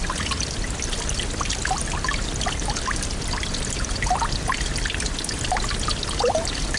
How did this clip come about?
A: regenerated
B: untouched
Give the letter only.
A